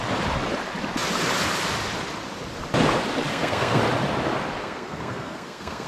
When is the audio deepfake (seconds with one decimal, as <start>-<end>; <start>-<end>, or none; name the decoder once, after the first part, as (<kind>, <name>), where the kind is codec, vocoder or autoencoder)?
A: 3.3-3.8 (codec, SNAC); 4.6-5.9